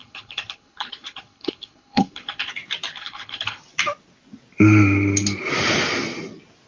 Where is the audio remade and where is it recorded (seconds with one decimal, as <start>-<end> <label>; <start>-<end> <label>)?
0.0-2.5 remade; 2.5-2.9 recorded; 2.9-3.6 remade; 3.6-6.7 recorded